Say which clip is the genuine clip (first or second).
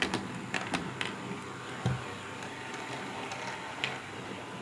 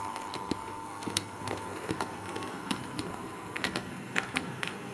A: first